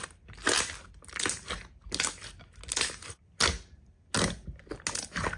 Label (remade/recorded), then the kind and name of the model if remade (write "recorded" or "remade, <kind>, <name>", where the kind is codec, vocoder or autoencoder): recorded